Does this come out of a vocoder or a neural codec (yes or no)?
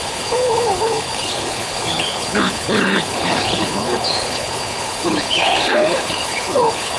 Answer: yes